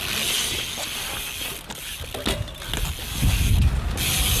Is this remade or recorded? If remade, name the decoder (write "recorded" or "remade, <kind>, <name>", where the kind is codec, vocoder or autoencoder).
recorded